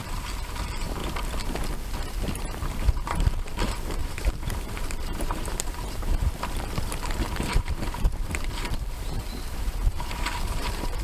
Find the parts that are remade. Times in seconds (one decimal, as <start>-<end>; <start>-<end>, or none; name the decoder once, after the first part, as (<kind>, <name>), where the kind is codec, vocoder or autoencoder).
0.0-1.0 (vocoder, BigVGAN v2); 2.0-11.0